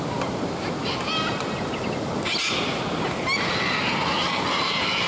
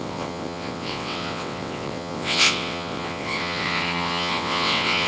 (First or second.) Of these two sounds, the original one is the first